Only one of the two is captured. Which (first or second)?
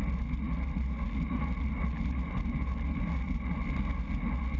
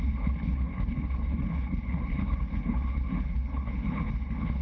first